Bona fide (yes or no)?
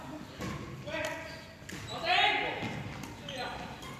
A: yes